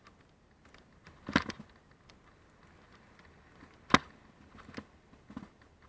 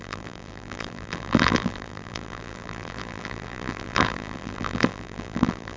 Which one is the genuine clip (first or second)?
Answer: first